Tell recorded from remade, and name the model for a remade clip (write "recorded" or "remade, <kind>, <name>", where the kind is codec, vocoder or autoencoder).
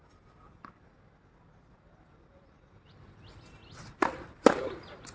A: recorded